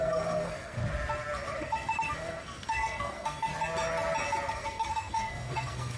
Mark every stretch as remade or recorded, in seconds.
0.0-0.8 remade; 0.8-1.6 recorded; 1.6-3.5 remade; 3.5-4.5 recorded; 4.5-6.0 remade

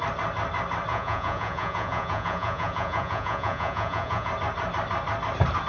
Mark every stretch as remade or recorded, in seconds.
0.0-0.9 recorded; 0.9-4.3 remade; 4.3-5.7 recorded

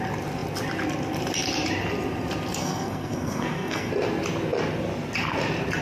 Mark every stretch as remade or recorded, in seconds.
0.0-2.6 recorded; 2.6-3.9 remade; 3.9-5.8 recorded

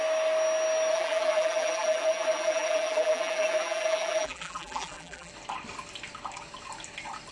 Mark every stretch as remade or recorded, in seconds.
0.0-0.9 recorded; 0.9-5.3 remade; 5.3-7.3 recorded

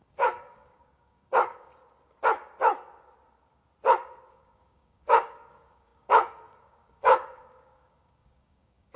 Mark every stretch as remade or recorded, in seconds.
0.0-1.8 remade; 1.8-4.3 recorded; 4.3-9.0 remade